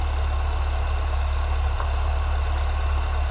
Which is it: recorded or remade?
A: recorded